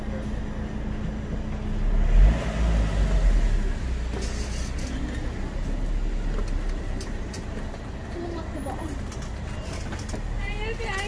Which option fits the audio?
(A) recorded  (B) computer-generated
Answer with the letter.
A